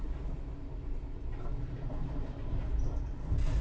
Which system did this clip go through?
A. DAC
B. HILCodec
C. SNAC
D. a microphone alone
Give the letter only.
D